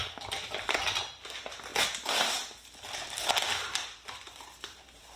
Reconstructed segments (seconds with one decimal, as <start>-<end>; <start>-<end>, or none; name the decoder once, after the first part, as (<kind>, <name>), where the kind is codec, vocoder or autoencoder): none